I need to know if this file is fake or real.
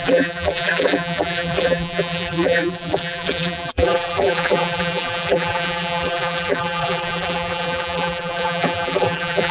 fake